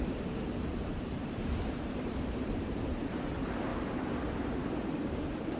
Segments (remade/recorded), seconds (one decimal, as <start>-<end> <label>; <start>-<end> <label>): 0.0-5.6 remade